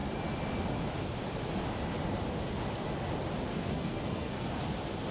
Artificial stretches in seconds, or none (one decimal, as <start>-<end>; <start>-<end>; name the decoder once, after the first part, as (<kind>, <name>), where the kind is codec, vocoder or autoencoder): 3.5-4.5 (codec, SNAC)